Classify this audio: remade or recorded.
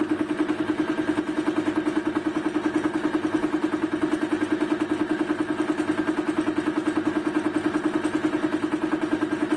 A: recorded